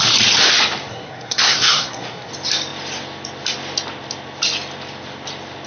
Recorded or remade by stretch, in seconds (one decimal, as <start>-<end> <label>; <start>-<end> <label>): 0.0-0.9 recorded; 0.9-2.3 remade; 2.3-5.7 recorded